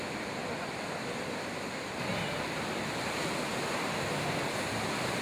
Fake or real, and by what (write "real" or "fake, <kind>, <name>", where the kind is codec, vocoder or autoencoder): real